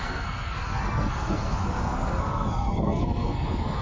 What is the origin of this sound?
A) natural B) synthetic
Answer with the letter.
B